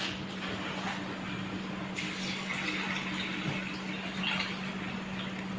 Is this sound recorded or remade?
recorded